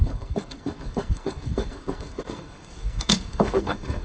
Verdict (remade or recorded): remade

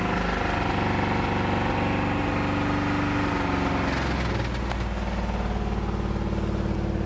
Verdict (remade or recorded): recorded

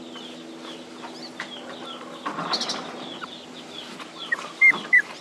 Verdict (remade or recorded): recorded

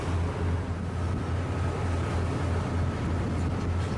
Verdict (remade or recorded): recorded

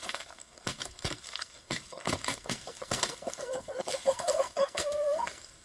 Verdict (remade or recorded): remade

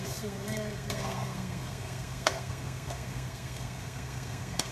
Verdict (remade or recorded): remade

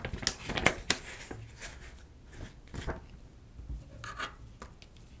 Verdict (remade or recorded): recorded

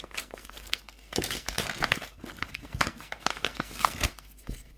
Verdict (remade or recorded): remade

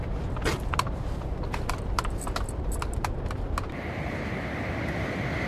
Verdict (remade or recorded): recorded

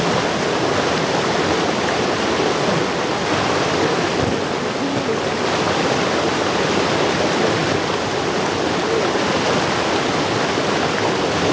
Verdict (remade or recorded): recorded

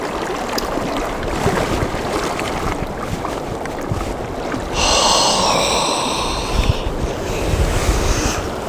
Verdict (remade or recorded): recorded